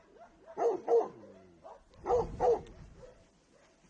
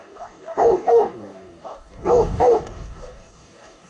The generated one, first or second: second